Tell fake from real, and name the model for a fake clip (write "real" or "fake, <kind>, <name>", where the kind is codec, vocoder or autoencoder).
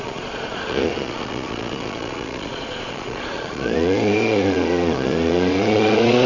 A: fake, vocoder, Vocos